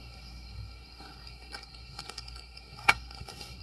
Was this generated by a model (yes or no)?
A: yes